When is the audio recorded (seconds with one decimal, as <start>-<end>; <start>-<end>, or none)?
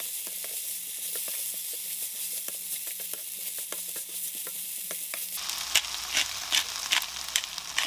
0.0-7.9